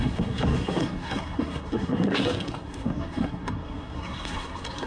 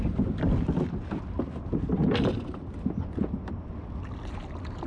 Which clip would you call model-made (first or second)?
first